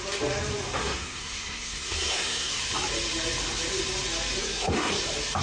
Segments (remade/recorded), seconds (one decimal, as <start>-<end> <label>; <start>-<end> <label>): 0.0-0.8 recorded; 0.8-2.6 remade; 2.6-4.4 recorded; 4.4-4.9 remade; 4.9-5.4 recorded